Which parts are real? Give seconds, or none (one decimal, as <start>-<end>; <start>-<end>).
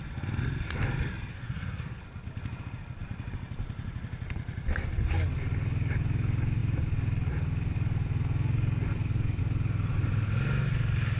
0.0-1.3; 2.0-11.2